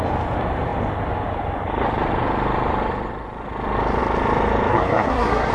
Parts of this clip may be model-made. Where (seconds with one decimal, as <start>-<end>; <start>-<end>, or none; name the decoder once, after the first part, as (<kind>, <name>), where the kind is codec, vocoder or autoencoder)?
4.7-5.5 (codec, SNAC)